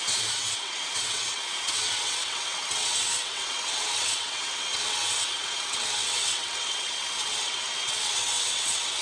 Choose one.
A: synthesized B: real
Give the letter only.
A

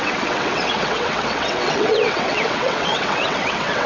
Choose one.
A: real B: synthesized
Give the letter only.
B